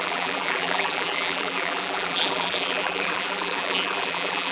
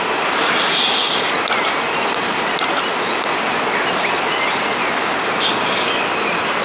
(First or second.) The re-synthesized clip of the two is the first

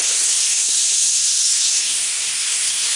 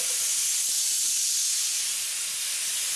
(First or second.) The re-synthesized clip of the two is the first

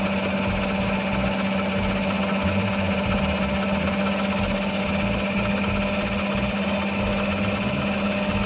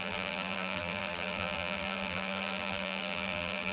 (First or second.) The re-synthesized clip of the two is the second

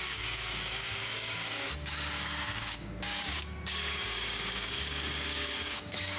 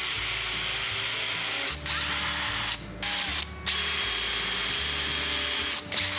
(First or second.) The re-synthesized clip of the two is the first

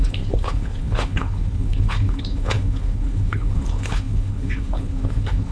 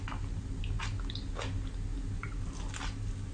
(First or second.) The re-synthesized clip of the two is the first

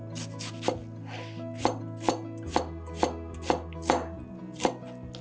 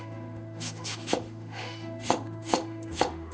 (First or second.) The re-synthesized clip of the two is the second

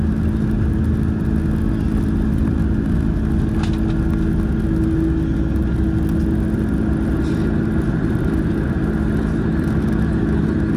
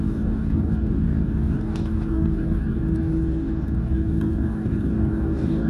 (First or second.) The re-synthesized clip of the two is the second